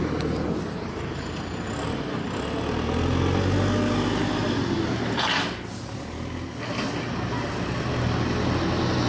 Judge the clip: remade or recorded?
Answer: recorded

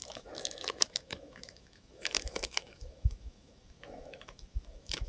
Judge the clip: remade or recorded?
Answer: remade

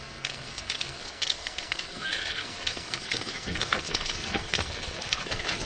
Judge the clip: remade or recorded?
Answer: remade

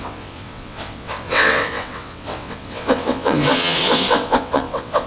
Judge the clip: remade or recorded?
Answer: remade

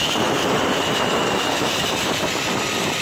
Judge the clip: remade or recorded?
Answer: remade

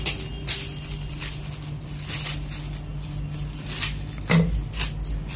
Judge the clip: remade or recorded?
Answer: recorded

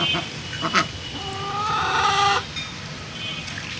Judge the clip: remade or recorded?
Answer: recorded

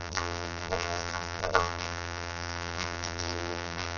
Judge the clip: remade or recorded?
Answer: remade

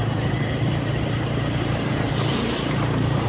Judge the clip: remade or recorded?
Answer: remade